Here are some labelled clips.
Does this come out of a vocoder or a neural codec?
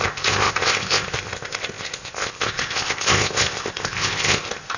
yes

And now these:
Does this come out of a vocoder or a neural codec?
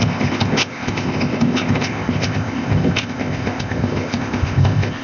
yes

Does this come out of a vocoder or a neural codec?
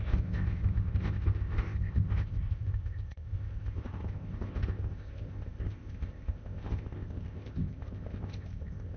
yes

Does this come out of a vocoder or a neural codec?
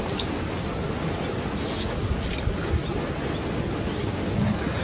no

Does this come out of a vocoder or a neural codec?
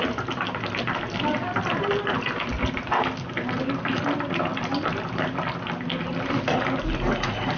no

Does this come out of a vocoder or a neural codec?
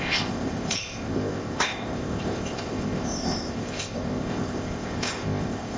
yes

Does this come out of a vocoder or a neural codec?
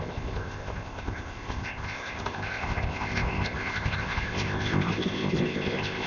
yes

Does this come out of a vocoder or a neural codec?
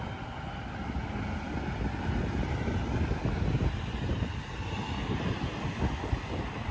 no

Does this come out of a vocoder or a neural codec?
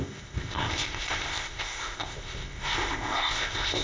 yes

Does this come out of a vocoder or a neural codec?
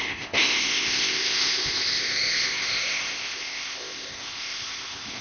yes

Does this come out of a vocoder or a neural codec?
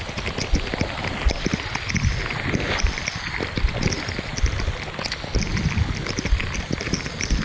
no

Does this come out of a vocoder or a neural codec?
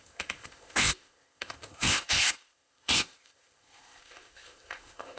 yes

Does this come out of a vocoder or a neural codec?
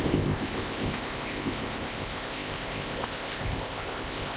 yes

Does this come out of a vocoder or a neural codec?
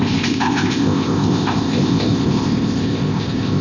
yes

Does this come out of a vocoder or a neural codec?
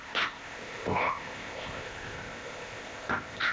yes